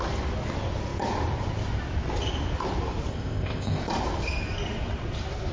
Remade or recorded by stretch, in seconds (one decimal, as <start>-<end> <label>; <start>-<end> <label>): 0.0-3.1 recorded; 3.1-3.8 remade; 3.8-5.5 recorded